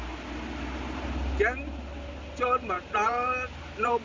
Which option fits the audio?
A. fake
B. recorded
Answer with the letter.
B